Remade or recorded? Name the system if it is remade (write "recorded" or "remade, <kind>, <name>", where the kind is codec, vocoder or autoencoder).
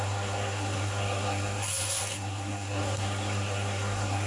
remade, codec, SNAC